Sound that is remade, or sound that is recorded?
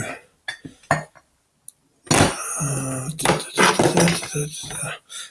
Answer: recorded